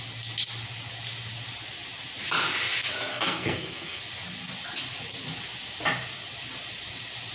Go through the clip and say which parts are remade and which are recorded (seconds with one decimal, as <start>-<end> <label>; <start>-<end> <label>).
0.0-3.1 recorded; 3.1-4.0 remade; 4.0-7.3 recorded